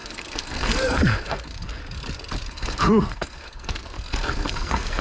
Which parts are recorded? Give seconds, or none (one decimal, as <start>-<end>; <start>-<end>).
1.8-2.5